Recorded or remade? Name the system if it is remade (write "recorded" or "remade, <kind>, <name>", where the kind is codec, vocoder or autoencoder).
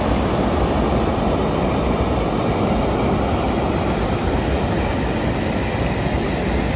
recorded